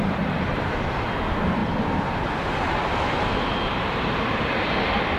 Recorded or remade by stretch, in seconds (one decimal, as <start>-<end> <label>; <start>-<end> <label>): 0.0-3.7 recorded; 3.7-4.6 remade; 4.6-5.2 recorded